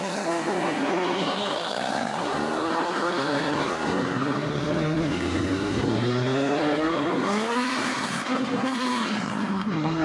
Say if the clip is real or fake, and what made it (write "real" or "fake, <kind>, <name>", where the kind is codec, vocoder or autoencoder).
fake, codec, SNAC